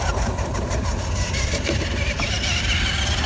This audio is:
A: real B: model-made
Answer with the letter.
B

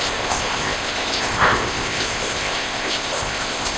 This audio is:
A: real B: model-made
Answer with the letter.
B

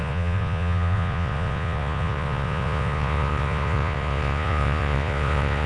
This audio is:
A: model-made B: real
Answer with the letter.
A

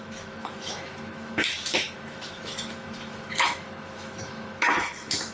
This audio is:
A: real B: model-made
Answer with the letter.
B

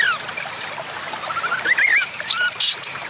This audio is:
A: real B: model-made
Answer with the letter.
A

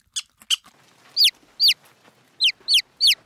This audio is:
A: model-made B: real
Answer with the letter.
B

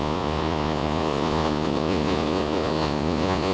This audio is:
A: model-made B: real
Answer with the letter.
A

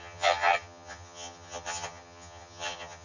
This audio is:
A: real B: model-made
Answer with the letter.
B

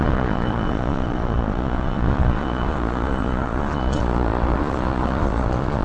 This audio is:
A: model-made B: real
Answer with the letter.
A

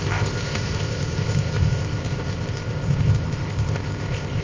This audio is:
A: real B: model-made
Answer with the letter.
B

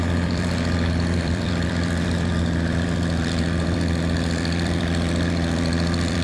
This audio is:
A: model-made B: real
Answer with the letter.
A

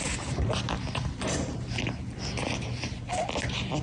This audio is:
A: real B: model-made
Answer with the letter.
A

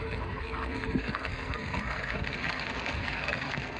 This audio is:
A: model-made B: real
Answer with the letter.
A